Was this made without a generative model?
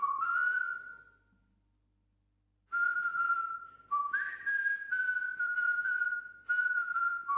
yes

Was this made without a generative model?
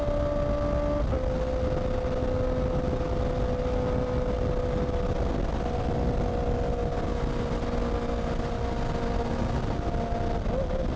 yes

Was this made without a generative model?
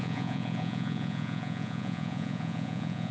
no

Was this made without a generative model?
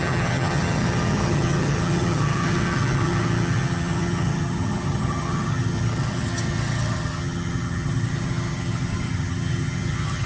no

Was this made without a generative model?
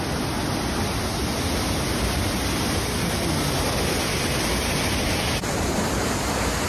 yes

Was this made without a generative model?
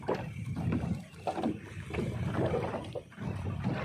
yes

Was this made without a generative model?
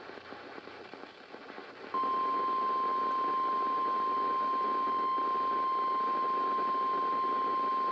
yes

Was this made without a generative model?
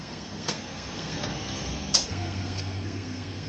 no